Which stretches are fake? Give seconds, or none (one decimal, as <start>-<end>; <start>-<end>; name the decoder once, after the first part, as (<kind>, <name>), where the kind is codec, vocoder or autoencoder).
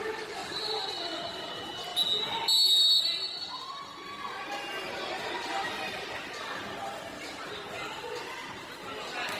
0.4-1.5 (vocoder, BigVGAN v2)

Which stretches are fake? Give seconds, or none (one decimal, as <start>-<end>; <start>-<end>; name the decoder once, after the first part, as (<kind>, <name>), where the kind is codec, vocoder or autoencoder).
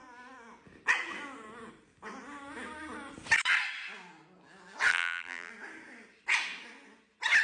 4.9-5.5 (vocoder, BigVGAN v2)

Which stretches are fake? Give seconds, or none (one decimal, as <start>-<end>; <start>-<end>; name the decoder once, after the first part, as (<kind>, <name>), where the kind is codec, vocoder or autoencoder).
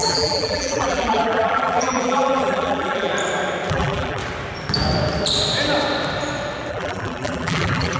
0.0-3.1 (vocoder, BigVGAN v2); 3.7-4.2; 6.7-8.0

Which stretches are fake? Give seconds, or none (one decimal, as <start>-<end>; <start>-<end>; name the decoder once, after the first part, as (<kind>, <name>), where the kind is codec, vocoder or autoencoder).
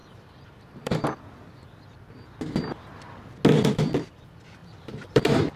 0.0-1.0 (vocoder, BigVGAN v2); 4.6-5.6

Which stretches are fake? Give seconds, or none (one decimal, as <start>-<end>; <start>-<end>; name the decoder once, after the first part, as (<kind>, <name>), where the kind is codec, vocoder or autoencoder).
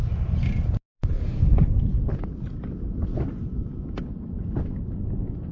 none